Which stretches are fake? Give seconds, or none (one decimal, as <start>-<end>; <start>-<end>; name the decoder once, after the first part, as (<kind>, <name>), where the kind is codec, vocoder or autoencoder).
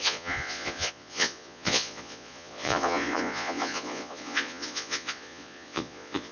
0.0-6.3 (vocoder, Vocos)